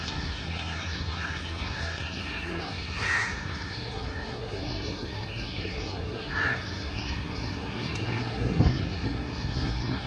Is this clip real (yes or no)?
no